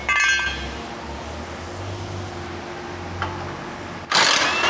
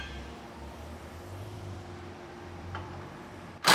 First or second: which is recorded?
first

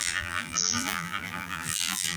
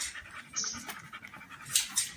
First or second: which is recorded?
second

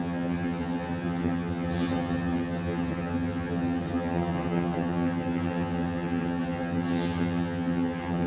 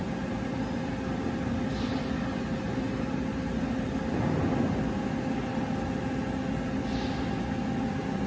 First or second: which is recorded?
second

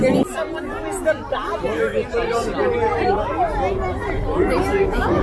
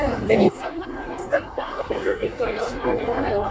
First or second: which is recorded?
first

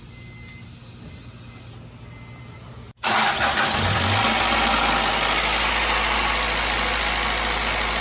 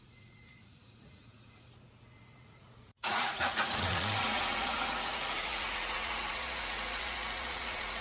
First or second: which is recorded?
first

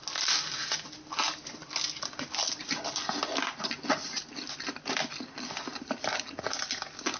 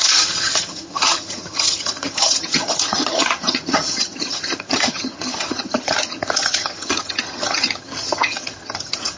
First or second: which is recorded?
first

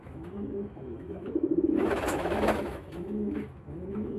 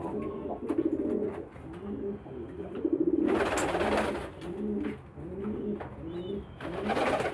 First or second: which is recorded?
second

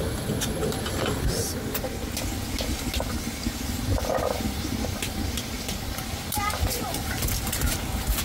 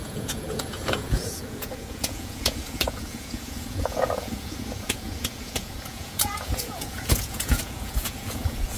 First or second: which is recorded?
first